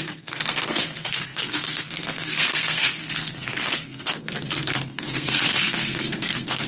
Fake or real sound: fake